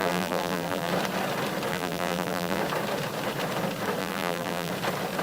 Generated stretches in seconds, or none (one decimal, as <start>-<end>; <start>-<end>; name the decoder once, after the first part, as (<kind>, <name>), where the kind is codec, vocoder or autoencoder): 0.0-0.9 (vocoder, BigVGAN v2); 1.7-2.6; 4.0-4.7